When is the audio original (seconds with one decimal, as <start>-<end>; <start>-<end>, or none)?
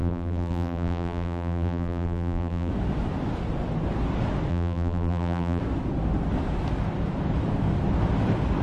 2.7-4.5; 5.6-8.6